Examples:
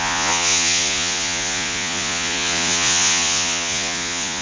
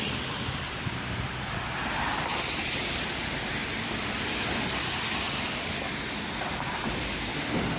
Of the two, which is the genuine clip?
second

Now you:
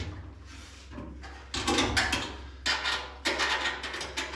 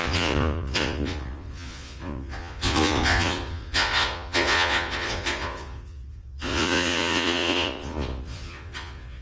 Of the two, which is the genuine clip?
first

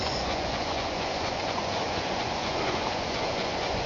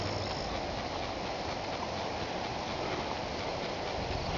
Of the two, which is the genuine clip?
second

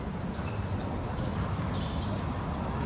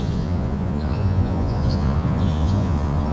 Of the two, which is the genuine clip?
first